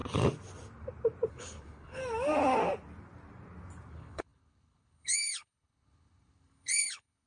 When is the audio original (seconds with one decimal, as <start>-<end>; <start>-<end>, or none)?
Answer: 0.0-1.3; 2.0-3.9